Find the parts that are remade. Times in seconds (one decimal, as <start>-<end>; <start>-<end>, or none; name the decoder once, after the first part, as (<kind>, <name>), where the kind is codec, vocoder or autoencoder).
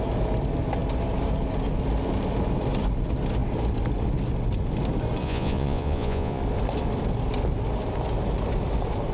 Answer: 5.2-6.4 (vocoder, Vocos)